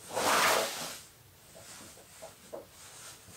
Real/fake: real